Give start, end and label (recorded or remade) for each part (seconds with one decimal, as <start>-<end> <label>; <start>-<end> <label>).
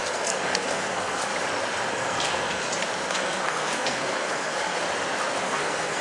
0.0-1.3 remade; 1.3-1.9 recorded; 1.9-2.6 remade; 2.6-3.1 recorded; 3.1-4.7 remade; 4.7-5.4 recorded; 5.4-6.0 remade